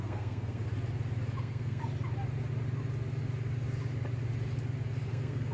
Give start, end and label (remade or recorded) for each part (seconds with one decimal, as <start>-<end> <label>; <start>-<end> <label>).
0.0-0.6 remade; 0.6-1.4 recorded; 1.4-1.8 remade; 1.8-5.1 recorded; 5.1-5.5 remade